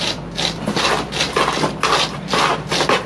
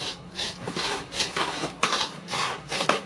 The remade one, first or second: second